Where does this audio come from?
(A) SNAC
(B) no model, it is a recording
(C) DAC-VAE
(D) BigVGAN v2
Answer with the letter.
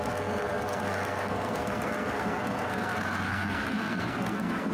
A